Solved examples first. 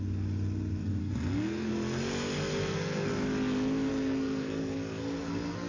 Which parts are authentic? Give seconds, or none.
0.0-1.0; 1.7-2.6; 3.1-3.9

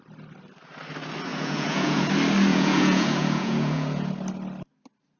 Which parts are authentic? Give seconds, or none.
0.0-1.3; 2.1-2.5; 4.1-5.2

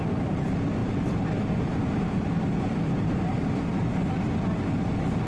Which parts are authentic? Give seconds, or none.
0.0-0.8; 4.0-5.3